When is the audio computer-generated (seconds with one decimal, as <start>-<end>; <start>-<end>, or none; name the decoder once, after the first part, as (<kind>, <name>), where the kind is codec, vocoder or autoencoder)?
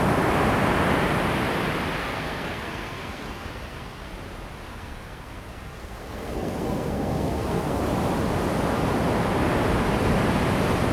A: 2.0-4.1 (codec, SNAC); 4.7-7.8